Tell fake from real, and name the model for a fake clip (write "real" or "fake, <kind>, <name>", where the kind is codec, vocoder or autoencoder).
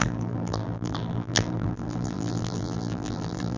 fake, vocoder, BigVGAN v2